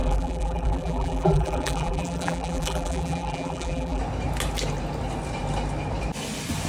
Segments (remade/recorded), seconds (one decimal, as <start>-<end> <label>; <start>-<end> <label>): 0.0-4.0 remade; 4.0-6.7 recorded